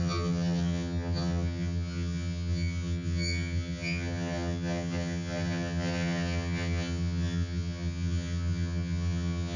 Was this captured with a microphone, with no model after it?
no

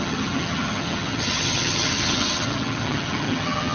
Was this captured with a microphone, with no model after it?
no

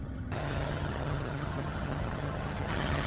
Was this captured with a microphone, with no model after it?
no